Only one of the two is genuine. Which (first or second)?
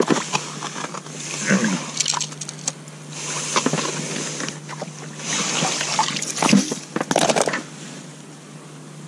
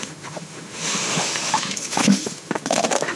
first